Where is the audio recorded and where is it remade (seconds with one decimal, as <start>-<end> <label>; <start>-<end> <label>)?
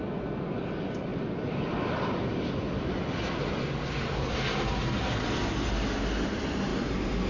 0.0-7.3 recorded